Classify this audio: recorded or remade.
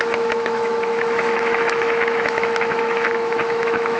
remade